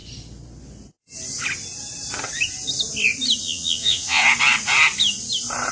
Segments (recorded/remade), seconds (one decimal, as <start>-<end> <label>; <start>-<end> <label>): 0.0-3.4 recorded; 3.4-4.2 remade; 4.2-5.7 recorded